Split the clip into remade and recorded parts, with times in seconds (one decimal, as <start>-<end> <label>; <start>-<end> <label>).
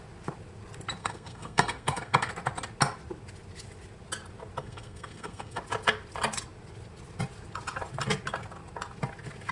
0.0-1.0 recorded; 1.0-2.3 remade; 2.3-4.6 recorded; 4.6-5.6 remade; 5.6-9.5 recorded